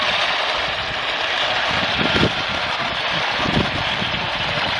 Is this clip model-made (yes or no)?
yes